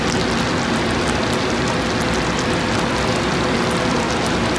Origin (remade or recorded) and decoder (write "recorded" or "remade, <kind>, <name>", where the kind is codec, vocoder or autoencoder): recorded